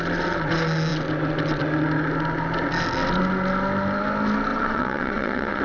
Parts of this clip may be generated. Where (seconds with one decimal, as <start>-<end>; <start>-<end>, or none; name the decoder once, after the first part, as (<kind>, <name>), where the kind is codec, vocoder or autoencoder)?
4.5-5.6 (vocoder, WaveNeXt)